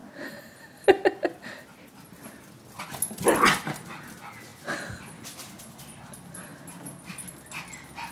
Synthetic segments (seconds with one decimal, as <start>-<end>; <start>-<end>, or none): none